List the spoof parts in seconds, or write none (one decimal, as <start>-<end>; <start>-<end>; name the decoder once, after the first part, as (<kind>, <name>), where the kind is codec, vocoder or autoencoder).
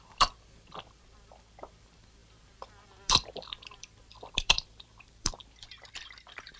0.0-6.6 (vocoder, BigVGAN v2)